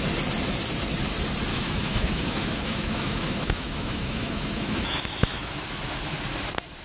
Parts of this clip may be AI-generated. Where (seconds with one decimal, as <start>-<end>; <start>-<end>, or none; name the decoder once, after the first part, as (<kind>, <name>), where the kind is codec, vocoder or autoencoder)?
1.5-5.6 (autoencoder, DAC-VAE)